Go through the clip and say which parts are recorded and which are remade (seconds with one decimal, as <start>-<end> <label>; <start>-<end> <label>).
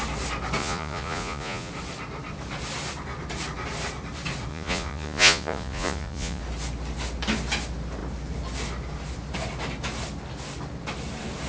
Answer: 0.0-0.6 recorded; 0.6-1.7 remade; 1.7-4.5 recorded; 4.5-6.4 remade; 6.4-11.5 recorded